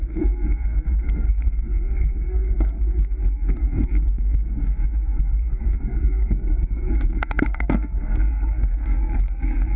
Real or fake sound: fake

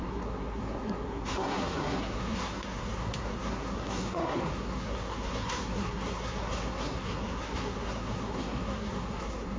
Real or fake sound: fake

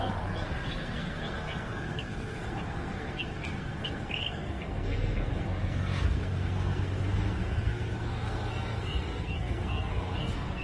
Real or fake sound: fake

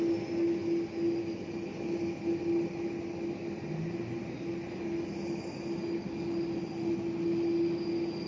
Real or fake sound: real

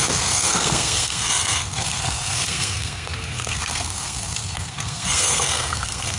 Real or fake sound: fake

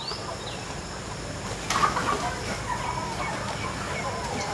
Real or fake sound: real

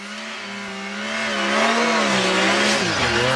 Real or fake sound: real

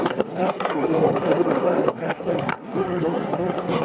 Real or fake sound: fake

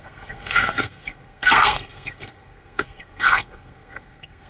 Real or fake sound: fake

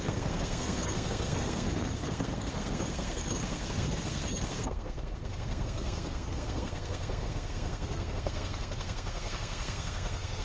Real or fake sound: fake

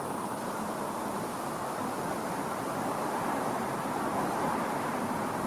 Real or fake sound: real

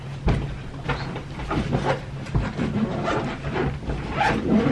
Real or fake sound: real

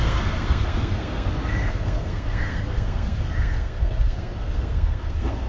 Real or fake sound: fake